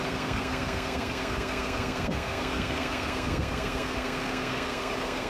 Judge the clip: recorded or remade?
remade